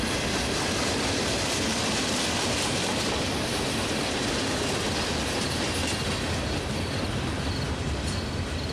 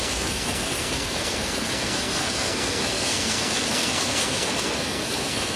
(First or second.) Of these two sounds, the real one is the first